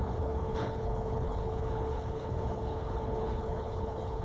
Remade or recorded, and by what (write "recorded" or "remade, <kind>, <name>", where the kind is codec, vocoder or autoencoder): remade, codec, HILCodec